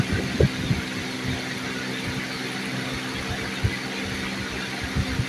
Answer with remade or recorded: recorded